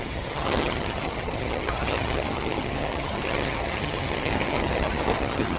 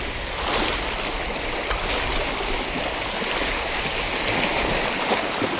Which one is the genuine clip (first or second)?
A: second